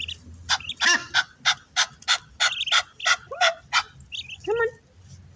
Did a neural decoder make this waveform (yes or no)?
no